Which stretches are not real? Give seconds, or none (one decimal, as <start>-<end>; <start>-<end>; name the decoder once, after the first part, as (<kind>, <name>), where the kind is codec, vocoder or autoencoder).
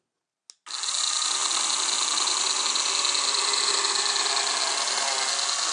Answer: none